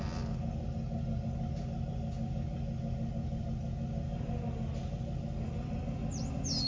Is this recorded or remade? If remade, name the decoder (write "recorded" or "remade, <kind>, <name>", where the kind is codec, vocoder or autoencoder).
recorded